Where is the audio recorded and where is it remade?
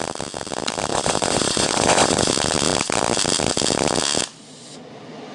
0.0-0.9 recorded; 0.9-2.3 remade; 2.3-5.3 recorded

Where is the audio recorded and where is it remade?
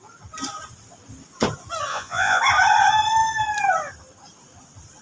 0.0-1.9 recorded; 1.9-2.4 remade; 2.4-5.0 recorded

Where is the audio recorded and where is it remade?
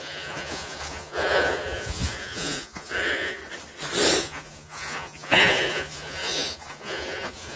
0.0-3.4 remade; 3.4-4.2 recorded; 4.2-7.6 remade